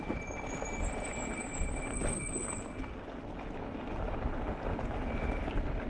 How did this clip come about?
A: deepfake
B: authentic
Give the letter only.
B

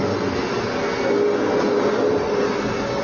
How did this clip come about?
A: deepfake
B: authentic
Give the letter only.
B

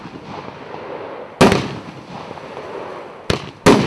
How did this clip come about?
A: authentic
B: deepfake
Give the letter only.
A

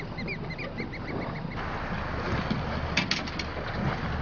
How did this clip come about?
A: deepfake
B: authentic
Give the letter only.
B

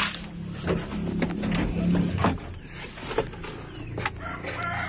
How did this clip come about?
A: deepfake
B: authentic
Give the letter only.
B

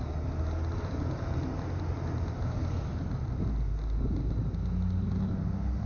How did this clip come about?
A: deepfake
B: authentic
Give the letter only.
B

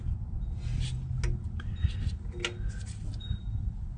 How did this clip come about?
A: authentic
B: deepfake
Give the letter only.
A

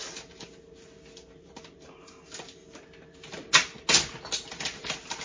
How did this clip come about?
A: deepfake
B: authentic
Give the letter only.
B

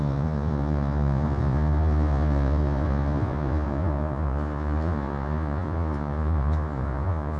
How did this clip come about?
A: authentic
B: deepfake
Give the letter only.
B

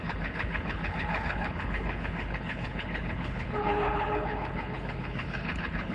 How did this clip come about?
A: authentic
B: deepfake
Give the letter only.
B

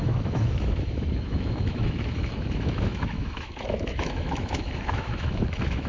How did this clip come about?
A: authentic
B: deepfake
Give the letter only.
B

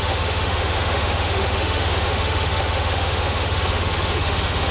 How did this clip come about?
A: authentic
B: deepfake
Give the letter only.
B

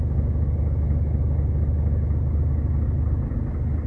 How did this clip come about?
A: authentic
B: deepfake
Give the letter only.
A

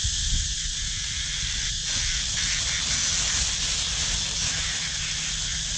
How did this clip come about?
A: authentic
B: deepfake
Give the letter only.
A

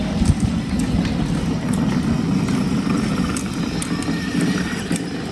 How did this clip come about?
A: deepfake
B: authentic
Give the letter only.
B